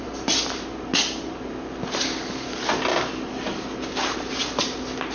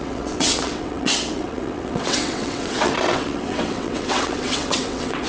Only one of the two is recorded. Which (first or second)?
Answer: first